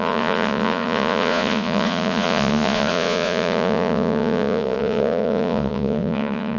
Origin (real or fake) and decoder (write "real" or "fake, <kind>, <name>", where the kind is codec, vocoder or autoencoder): fake, vocoder, Vocos